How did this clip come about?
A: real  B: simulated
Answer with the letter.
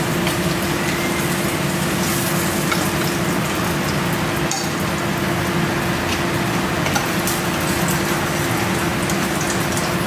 A